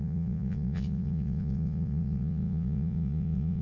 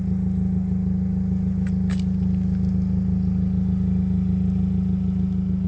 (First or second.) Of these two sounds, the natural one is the second